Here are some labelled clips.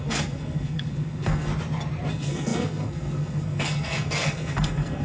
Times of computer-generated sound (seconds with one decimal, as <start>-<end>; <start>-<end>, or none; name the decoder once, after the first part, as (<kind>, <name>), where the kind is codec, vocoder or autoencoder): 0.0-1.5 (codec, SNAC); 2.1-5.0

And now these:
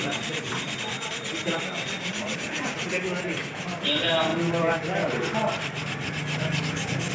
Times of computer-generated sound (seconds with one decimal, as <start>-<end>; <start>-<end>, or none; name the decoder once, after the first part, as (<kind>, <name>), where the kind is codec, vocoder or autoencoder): none

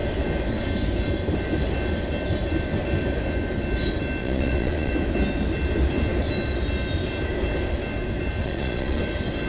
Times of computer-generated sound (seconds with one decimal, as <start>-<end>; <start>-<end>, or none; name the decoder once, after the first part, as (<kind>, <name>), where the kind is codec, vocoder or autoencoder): 4.2-4.9 (vocoder, Vocos); 8.4-9.0

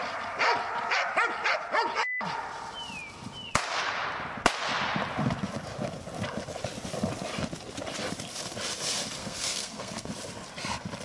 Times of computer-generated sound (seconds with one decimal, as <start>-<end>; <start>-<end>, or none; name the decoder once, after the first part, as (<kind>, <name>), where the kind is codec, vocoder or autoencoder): 9.2-10.1 (codec, SNAC)